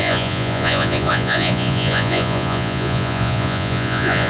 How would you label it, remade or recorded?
remade